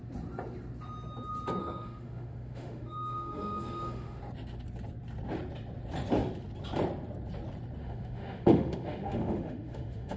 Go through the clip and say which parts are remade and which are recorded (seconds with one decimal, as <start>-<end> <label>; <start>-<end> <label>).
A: 0.0-1.6 recorded; 1.6-4.2 remade; 4.2-7.8 recorded; 7.8-10.2 remade